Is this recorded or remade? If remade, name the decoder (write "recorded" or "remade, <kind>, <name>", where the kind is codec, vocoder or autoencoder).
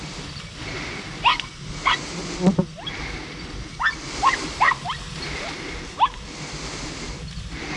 recorded